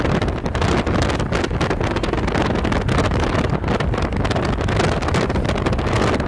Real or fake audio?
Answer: real